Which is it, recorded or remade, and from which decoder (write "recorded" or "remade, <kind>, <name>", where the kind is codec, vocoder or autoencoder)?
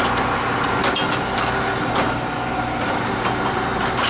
recorded